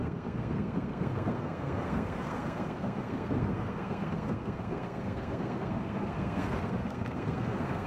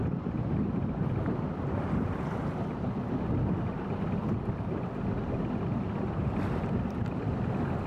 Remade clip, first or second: first